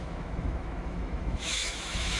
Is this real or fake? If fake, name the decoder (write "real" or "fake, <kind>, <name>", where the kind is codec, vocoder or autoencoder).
fake, autoencoder, DAC-VAE